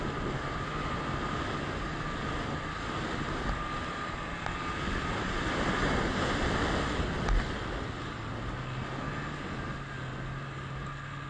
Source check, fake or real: real